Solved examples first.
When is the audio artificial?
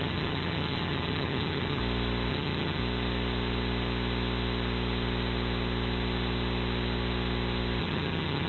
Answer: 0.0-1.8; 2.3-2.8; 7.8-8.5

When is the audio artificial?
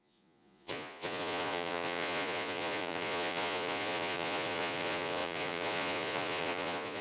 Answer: 0.0-7.0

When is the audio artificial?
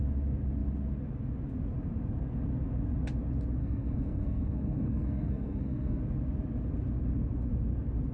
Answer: 3.6-6.0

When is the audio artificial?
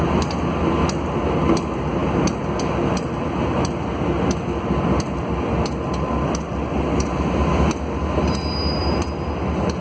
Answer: none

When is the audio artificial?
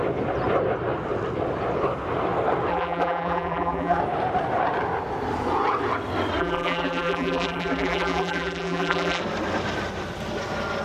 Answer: 2.7-4.0; 6.4-9.2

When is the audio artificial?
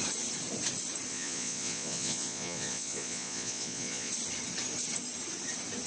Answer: 1.1-4.1